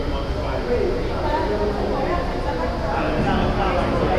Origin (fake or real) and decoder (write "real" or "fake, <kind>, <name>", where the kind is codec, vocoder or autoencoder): real